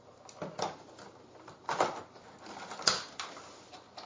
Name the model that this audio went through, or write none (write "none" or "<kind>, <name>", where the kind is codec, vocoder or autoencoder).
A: none